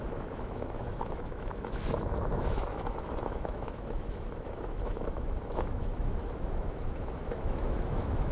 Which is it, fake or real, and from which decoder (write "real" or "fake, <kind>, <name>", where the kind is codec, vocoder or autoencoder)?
fake, autoencoder, DAC-VAE